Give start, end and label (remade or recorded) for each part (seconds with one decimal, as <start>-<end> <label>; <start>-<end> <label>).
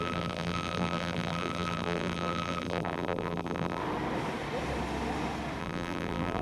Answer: 0.0-3.8 remade; 3.8-5.6 recorded; 5.6-6.4 remade